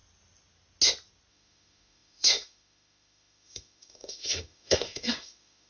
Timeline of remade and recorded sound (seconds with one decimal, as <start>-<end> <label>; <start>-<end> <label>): 0.0-1.3 recorded; 1.3-5.7 remade